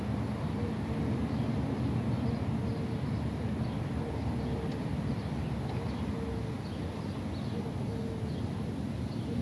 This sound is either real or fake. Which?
real